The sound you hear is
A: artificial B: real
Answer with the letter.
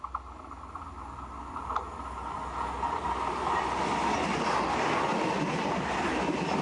B